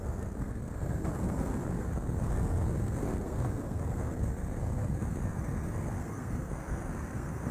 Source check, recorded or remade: remade